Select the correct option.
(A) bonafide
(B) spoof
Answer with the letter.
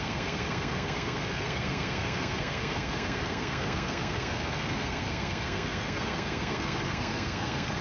B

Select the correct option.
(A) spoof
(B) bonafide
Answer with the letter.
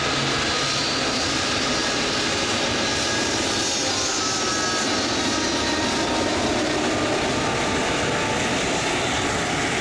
B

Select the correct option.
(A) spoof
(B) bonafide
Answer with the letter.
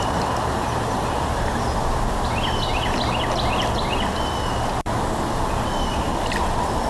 B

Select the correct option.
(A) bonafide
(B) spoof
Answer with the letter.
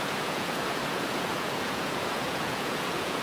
B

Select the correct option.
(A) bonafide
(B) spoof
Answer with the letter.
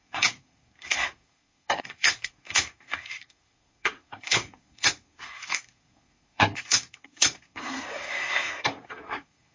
B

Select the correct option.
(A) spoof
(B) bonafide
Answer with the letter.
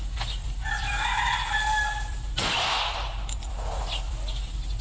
B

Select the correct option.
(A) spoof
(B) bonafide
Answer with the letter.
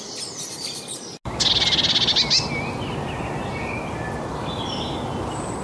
B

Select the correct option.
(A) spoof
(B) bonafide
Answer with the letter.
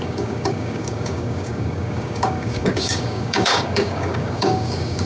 A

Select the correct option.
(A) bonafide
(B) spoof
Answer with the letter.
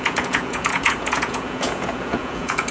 B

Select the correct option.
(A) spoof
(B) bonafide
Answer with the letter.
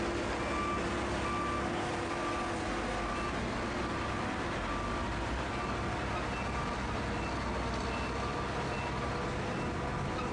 B